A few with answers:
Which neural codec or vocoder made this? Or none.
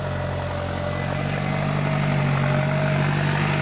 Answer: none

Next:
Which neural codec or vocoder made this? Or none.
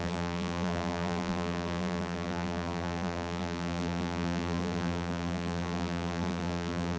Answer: vocoder, BigVGAN v2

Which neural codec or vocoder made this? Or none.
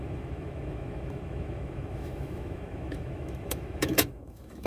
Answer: autoencoder, DAC-VAE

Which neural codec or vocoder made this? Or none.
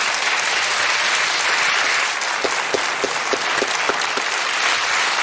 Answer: none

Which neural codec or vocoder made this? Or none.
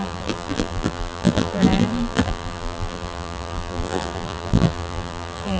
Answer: vocoder, BigVGAN v2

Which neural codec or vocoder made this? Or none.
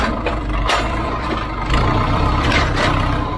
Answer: vocoder, BigVGAN v2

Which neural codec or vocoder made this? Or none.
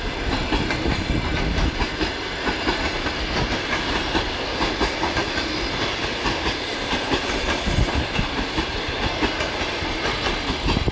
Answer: none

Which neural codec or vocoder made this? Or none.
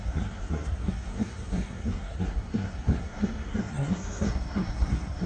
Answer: codec, SNAC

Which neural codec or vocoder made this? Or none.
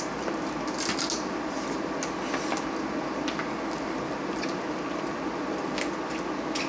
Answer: none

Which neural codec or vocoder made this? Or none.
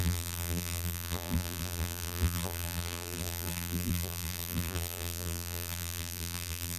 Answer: vocoder, BigVGAN v2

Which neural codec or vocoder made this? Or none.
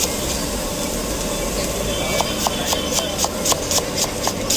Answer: none